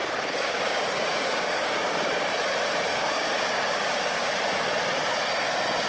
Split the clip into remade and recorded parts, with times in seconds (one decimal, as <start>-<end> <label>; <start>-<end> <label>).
0.0-2.3 remade; 2.3-2.9 recorded; 2.9-4.3 remade; 4.3-5.9 recorded